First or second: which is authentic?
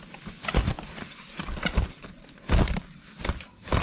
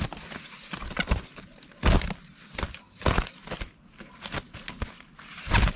second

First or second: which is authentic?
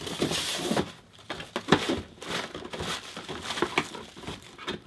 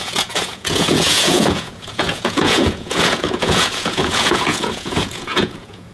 first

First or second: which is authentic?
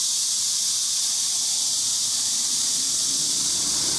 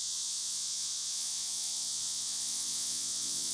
first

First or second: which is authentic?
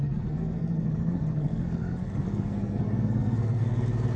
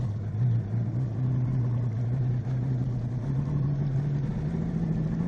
second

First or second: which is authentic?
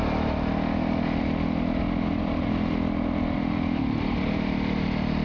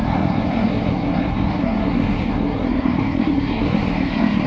first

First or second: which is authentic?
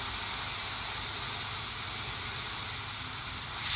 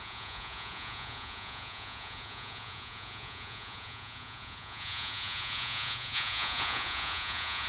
first